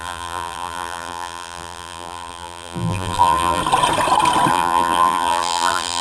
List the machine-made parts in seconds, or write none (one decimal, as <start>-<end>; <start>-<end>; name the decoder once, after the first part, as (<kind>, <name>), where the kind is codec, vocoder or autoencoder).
0.0-3.6 (vocoder, BigVGAN v2); 4.5-6.0